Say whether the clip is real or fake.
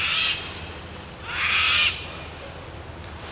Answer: real